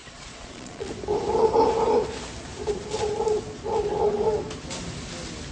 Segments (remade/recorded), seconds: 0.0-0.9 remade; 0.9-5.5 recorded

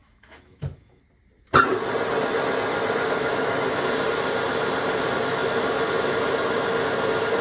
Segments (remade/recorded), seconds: 0.0-1.0 remade; 1.0-3.2 recorded; 3.2-3.8 remade; 3.8-7.4 recorded

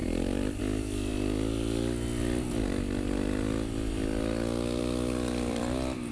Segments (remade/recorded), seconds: 0.0-1.1 remade; 1.1-4.8 recorded; 4.8-6.1 remade

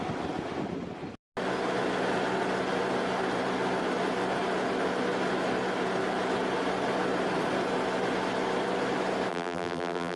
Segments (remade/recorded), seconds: 0.0-9.3 recorded; 9.3-10.2 remade

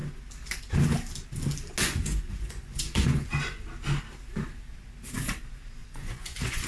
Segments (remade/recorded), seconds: 0.0-1.8 recorded; 1.8-3.6 remade; 3.6-5.8 recorded; 5.8-6.7 remade